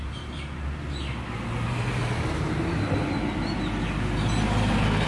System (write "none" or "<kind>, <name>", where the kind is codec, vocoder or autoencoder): none